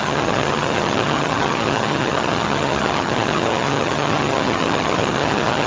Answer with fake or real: fake